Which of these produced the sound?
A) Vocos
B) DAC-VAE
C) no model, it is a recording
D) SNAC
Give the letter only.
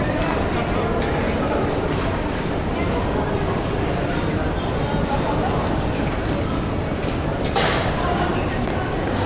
C